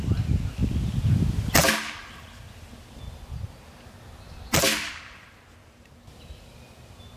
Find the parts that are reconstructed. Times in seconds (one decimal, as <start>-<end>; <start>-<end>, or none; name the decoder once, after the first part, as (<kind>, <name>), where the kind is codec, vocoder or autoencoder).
none